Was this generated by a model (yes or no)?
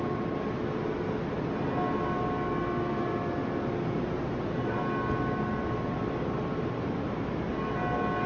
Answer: no